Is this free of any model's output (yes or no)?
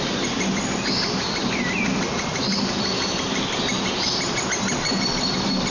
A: yes